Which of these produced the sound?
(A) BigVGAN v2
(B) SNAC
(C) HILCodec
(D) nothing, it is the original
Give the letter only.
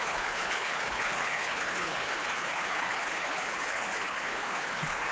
C